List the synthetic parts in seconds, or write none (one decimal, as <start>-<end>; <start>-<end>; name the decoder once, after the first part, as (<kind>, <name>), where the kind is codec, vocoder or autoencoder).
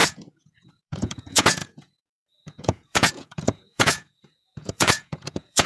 0.0-5.7 (vocoder, Vocos)